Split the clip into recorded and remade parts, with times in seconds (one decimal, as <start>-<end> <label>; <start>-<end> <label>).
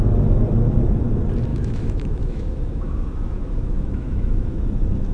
0.0-1.5 recorded; 1.5-4.6 remade; 4.6-5.1 recorded